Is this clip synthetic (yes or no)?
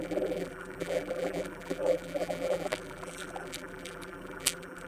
yes